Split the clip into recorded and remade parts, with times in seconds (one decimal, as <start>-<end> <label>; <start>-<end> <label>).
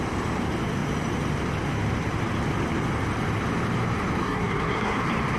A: 0.0-4.2 recorded; 4.2-5.0 remade; 5.0-5.4 recorded